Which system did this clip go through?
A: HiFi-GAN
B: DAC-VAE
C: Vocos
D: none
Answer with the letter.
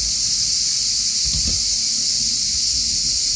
D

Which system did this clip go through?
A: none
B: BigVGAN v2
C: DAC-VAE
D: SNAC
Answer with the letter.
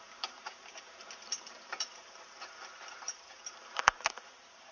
B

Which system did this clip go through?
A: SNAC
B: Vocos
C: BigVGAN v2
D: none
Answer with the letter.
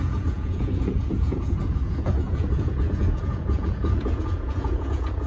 B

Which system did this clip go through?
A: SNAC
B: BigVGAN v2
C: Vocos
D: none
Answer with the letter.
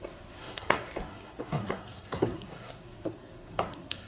A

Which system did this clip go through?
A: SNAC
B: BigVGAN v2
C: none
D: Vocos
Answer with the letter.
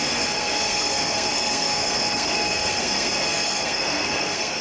A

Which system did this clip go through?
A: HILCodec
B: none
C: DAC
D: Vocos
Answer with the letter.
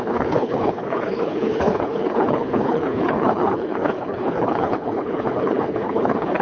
A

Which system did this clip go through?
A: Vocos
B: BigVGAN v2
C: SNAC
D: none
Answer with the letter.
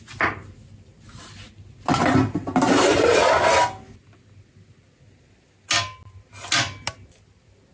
D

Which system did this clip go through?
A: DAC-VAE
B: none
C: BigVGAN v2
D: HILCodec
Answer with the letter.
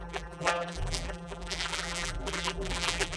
C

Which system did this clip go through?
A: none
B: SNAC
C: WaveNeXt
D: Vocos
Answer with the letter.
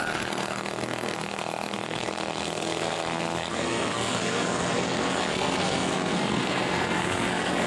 B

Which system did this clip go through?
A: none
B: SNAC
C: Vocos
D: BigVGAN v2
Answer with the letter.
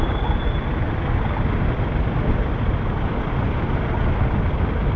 A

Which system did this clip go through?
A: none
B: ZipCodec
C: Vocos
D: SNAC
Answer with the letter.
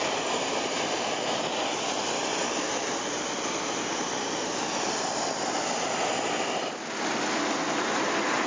A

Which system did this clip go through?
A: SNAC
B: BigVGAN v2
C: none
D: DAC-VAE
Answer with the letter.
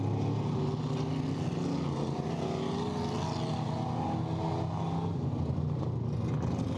C